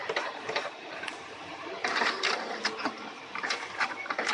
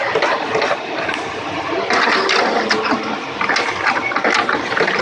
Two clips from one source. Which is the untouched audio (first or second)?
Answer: second